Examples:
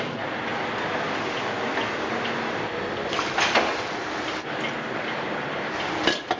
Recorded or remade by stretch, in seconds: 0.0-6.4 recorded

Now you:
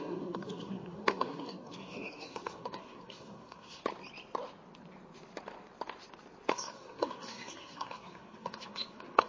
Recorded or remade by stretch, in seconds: 0.0-3.8 remade; 3.8-6.5 recorded; 6.5-9.3 remade